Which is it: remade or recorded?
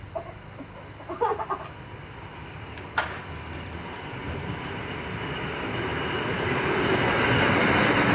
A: recorded